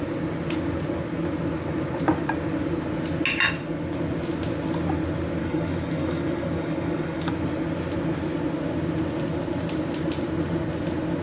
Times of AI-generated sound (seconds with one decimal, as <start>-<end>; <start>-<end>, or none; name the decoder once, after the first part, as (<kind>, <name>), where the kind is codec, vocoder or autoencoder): 5.4-7.3 (codec, DAC)